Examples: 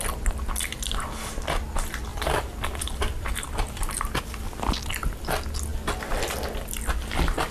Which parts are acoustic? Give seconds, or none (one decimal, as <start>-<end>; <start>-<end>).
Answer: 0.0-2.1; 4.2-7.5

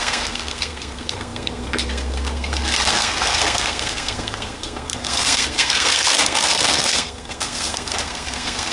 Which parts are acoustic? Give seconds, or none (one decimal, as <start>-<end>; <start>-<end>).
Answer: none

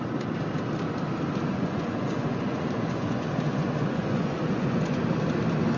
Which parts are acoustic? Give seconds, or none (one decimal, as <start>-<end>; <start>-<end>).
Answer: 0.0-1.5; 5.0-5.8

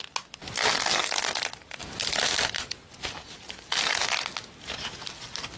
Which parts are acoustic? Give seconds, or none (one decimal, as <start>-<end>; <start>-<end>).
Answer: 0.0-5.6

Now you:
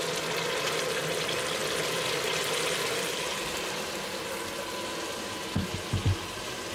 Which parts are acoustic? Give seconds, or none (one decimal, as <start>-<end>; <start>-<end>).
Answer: 0.0-6.7

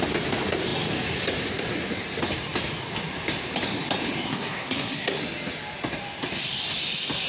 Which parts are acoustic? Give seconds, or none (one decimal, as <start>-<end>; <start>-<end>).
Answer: 0.0-4.3; 5.2-7.3

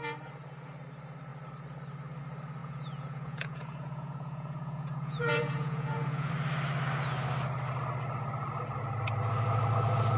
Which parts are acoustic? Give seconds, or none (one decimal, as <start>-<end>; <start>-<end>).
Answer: 0.0-2.6; 6.3-10.2